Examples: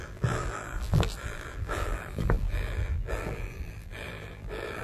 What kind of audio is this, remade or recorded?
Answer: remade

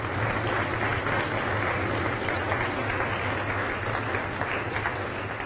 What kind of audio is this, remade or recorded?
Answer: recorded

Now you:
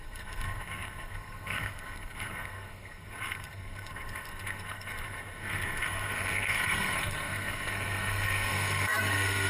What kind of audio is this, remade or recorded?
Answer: remade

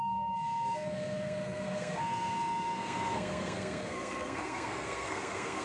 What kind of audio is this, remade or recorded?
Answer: remade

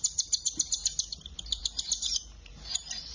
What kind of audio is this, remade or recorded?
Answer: remade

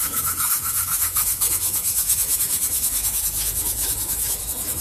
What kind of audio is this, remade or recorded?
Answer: remade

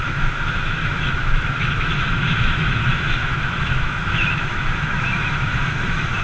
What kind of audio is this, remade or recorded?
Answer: remade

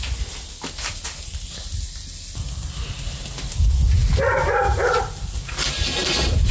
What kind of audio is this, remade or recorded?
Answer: recorded